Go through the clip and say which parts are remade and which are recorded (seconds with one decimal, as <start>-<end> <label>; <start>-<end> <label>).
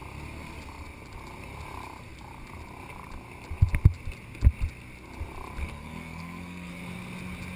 0.0-5.6 recorded; 5.6-6.7 remade; 6.7-7.6 recorded